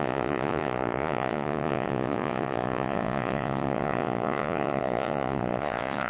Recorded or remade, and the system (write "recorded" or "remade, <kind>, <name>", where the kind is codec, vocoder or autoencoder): remade, vocoder, Vocos